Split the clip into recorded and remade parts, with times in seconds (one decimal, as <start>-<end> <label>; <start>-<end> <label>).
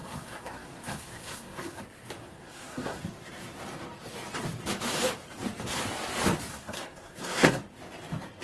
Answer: 0.0-1.8 remade; 1.8-2.2 recorded; 2.2-3.0 remade; 3.0-6.5 recorded; 6.5-7.6 remade; 7.6-8.4 recorded